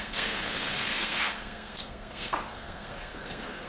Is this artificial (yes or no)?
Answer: yes